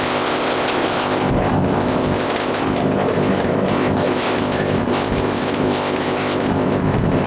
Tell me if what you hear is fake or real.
fake